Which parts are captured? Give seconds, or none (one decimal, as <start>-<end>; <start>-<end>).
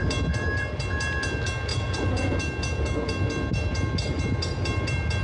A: 0.0-1.7; 2.4-5.2